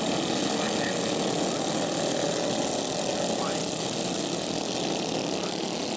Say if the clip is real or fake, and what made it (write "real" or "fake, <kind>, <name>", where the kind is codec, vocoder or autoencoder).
real